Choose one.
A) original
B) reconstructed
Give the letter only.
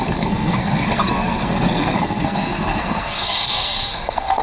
B